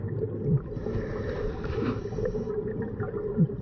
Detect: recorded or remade recorded